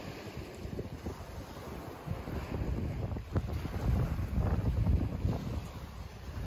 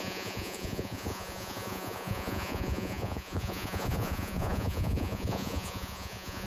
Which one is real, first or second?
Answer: first